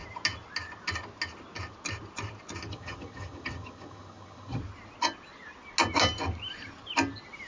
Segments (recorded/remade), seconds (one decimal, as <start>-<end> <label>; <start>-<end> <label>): 0.0-2.7 recorded; 2.7-4.6 remade; 4.6-7.5 recorded